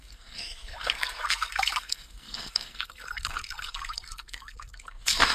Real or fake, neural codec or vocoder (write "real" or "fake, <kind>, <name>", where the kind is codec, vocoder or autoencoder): fake, codec, SNAC